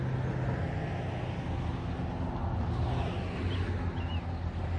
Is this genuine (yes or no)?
yes